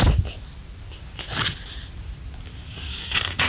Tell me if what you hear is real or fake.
real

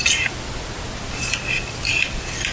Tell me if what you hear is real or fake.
real